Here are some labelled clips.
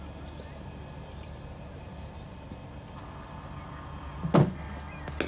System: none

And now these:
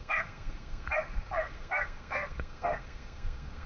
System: codec, SNAC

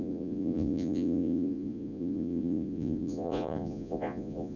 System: vocoder, Vocos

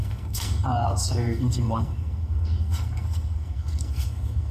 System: codec, SNAC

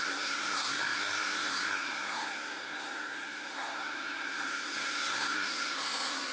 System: codec, SNAC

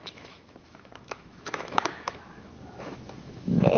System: autoencoder, DAC-VAE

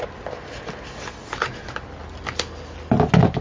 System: none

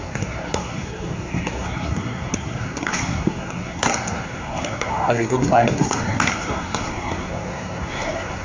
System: codec, SNAC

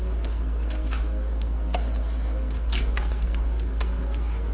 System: codec, SNAC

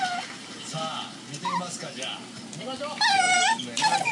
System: none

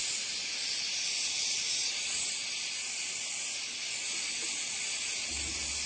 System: none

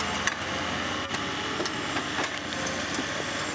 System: none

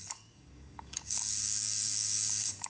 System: codec, DAC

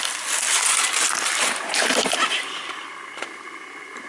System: none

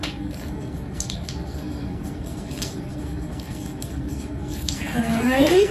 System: codec, SNAC